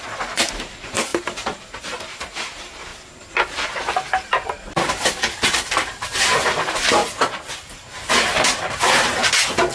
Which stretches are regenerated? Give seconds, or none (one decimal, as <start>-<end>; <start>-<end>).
0.0-2.9; 4.3-7.0; 7.7-9.7